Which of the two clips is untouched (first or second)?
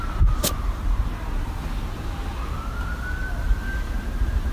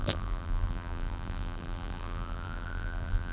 first